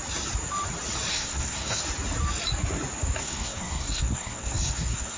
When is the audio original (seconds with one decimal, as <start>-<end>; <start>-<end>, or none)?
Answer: 0.0-1.1; 1.8-3.2